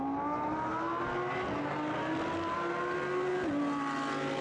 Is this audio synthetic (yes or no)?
no